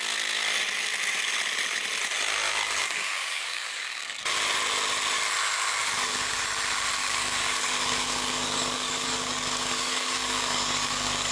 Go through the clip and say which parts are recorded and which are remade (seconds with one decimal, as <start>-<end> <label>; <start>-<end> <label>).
0.0-2.8 recorded; 2.8-4.2 remade; 4.2-5.8 recorded; 5.8-6.4 remade; 6.4-7.0 recorded; 7.0-11.3 remade